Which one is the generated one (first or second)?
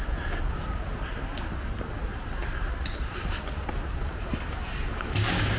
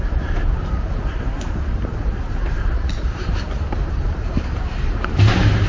second